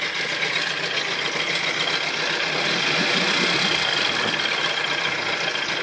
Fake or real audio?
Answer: real